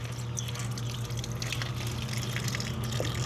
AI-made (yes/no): no